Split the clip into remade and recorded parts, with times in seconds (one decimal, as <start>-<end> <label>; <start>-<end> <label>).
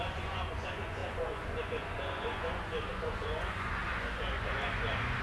0.0-5.2 remade